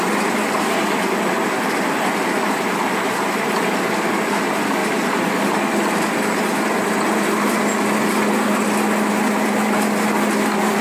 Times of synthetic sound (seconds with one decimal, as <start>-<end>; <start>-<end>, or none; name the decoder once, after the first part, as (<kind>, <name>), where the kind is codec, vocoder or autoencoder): 4.8-5.6 (vocoder, BigVGAN v2)